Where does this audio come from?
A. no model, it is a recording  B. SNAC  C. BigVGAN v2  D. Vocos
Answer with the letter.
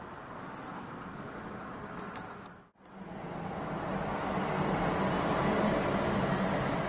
A